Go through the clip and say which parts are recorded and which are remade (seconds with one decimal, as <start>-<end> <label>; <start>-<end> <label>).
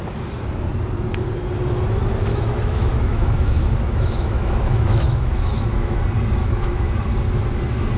0.0-2.3 recorded; 2.3-6.0 remade; 6.0-6.4 recorded; 6.4-6.9 remade; 6.9-8.0 recorded